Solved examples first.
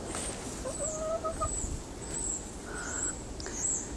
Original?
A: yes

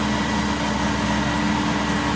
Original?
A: yes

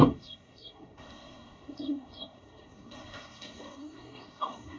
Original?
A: no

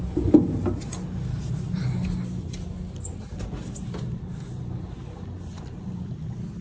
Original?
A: yes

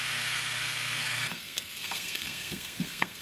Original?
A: no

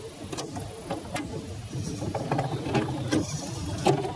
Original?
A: yes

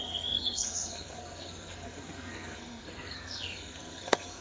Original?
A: no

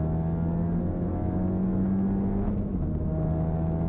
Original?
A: yes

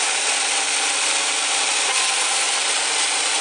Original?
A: yes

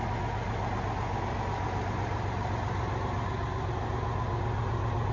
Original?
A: yes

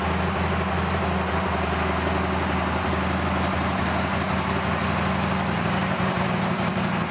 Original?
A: yes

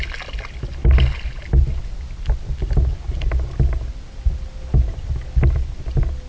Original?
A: yes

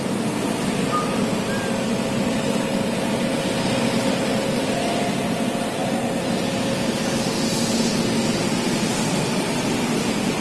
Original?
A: yes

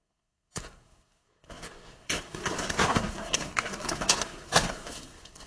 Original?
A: no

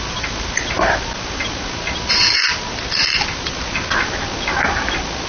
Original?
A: yes